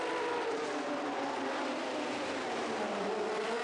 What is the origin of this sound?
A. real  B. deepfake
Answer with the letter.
B